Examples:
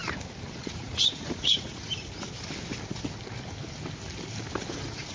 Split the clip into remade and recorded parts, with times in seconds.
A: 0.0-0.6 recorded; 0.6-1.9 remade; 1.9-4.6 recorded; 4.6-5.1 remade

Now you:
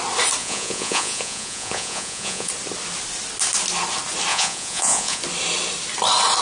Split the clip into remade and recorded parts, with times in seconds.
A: 0.0-0.4 recorded; 0.4-2.5 remade; 2.5-4.3 recorded; 4.3-5.2 remade; 5.2-6.4 recorded

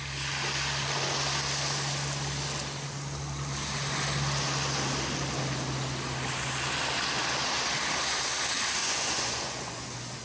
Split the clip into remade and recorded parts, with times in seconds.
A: 0.0-8.8 recorded; 8.8-10.2 remade